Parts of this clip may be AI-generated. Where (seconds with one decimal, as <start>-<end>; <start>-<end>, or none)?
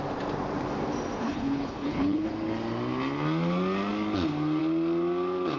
1.2-2.3